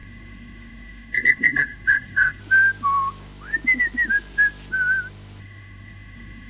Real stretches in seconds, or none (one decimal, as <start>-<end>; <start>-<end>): 2.4-5.4